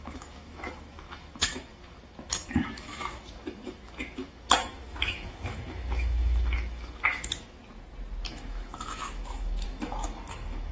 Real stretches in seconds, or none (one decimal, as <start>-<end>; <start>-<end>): 7.6-8.3